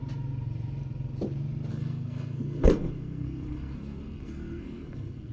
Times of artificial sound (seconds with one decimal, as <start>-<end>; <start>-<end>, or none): 1.7-5.3